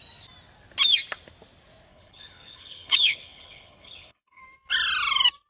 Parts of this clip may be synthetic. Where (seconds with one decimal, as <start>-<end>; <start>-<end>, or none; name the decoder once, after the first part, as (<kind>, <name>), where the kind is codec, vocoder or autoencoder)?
1.9-4.4 (codec, HILCodec)